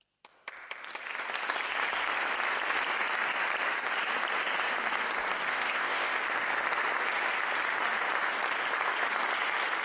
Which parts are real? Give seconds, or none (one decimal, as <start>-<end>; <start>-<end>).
0.0-5.5; 6.1-9.8